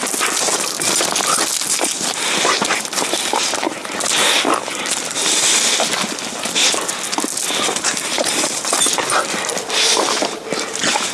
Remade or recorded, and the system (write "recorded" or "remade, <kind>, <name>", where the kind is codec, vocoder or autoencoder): recorded